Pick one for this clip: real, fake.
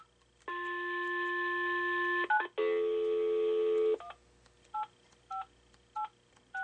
real